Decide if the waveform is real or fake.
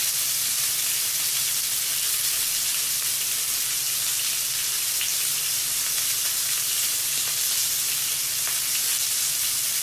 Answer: real